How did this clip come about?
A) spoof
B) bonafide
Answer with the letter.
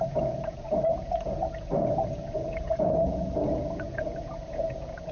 A